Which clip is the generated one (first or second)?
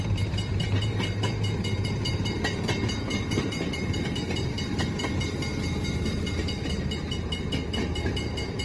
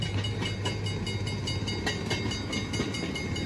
first